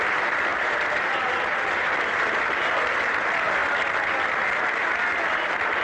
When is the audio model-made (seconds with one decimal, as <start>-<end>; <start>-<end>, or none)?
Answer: 0.5-1.9